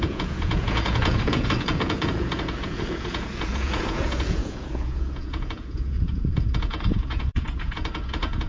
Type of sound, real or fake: fake